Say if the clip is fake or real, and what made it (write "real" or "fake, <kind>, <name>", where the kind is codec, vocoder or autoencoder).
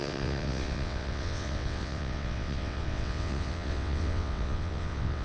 fake, vocoder, WaveNeXt